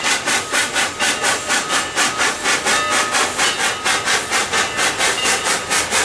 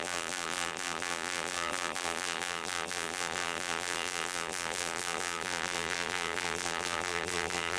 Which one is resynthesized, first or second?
second